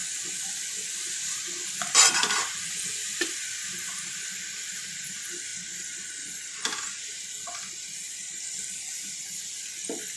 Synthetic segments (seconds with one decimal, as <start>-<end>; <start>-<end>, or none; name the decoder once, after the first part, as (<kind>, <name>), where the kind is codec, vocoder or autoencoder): none